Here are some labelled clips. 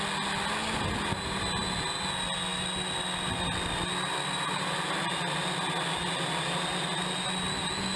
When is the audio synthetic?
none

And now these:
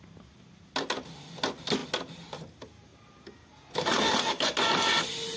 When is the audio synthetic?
none

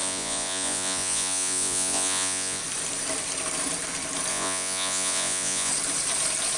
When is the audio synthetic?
0.0-2.6; 4.3-5.7